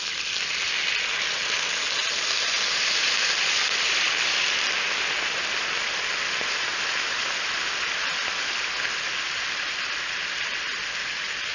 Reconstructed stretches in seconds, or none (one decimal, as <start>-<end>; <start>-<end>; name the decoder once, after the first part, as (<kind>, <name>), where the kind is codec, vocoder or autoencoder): none